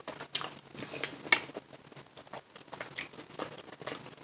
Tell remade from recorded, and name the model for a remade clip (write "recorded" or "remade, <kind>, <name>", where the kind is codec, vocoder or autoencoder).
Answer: recorded